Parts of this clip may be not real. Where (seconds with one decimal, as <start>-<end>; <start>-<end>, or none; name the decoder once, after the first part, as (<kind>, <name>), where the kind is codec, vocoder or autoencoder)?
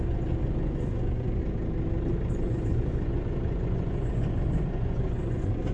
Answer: 0.0-1.4 (vocoder, Vocos); 2.3-5.7